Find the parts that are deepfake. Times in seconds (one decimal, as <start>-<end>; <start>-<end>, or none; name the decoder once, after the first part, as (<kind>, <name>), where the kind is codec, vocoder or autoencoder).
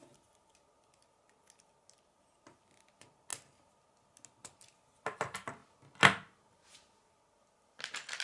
none